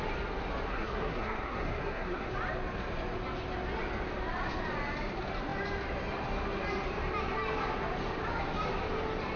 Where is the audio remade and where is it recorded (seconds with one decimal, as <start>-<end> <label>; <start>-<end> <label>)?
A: 0.0-0.7 recorded; 0.7-2.3 remade; 2.3-9.4 recorded